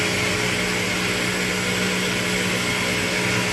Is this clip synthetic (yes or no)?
no